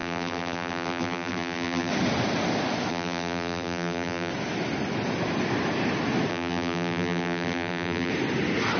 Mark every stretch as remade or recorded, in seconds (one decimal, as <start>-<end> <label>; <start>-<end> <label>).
0.0-1.9 remade; 1.9-2.9 recorded; 2.9-4.3 remade; 4.3-6.3 recorded; 6.3-8.1 remade; 8.1-8.8 recorded